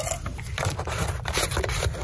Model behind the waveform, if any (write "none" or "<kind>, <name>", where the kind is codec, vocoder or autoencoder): none